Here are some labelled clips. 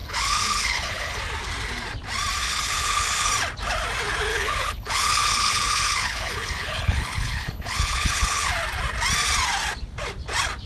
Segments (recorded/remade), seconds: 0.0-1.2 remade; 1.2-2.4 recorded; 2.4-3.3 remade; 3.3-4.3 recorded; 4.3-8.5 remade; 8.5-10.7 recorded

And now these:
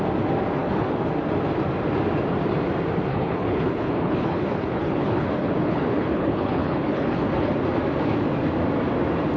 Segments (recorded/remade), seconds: 0.0-0.6 recorded; 0.6-1.1 remade; 1.1-3.1 recorded; 3.1-7.5 remade; 7.5-9.4 recorded

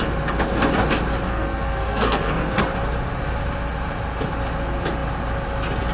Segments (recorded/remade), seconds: 0.0-1.3 recorded; 1.3-2.6 remade; 2.6-5.9 recorded

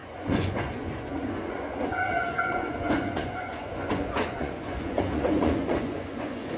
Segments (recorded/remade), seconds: 0.0-6.6 remade

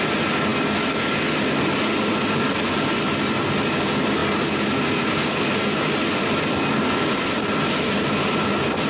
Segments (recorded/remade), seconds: 0.0-8.9 recorded

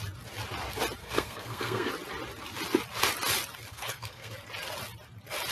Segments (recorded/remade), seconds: 0.0-1.0 recorded; 1.0-1.9 remade; 1.9-3.7 recorded; 3.7-4.3 remade; 4.3-5.5 recorded